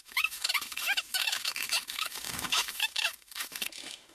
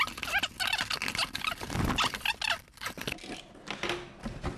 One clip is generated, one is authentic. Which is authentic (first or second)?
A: second